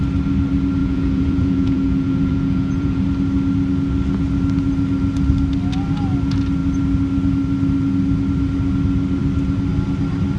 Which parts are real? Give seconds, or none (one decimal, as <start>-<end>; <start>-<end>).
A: 0.0-0.8; 3.0-10.4